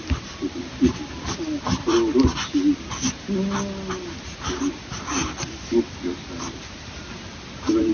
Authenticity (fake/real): real